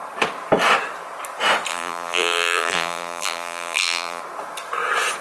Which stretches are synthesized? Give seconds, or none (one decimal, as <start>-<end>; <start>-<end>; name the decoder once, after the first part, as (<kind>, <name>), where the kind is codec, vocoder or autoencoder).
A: 1.7-4.2 (vocoder, BigVGAN v2)